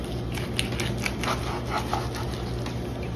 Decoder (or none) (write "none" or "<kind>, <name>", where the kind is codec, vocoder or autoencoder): none